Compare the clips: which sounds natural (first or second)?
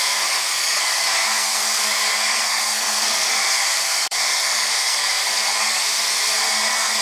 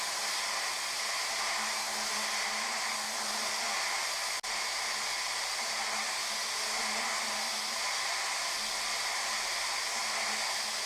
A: second